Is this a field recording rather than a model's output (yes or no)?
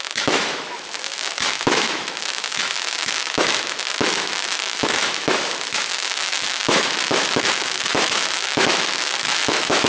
no